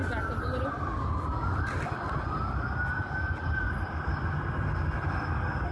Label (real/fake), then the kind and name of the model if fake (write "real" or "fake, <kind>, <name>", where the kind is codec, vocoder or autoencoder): real